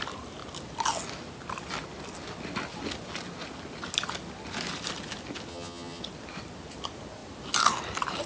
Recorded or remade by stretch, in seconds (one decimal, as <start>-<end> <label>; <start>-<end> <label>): 0.0-5.5 recorded; 5.5-6.0 remade; 6.0-8.3 recorded